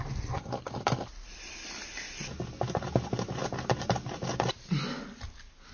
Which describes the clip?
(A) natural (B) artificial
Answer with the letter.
A